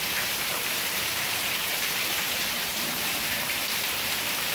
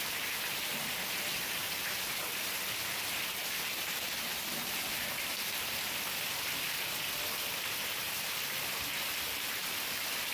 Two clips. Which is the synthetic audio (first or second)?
first